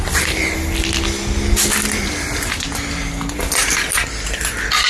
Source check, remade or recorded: recorded